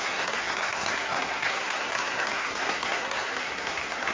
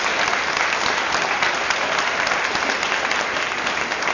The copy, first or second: first